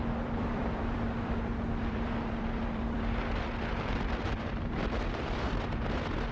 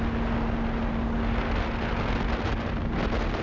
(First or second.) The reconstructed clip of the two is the first